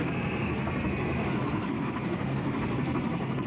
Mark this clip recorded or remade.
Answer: remade